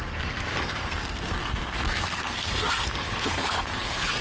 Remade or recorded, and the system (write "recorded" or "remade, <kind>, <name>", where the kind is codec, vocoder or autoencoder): remade, codec, SNAC